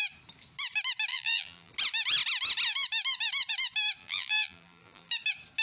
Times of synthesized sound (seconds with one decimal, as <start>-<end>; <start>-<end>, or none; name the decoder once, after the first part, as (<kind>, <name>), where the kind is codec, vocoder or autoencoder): 1.1-1.7 (vocoder, BigVGAN v2); 4.0-5.1